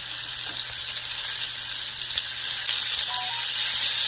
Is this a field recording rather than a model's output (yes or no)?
yes